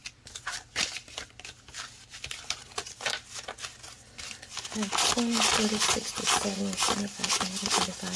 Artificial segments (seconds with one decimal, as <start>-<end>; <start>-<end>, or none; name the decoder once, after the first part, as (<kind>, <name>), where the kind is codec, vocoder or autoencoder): none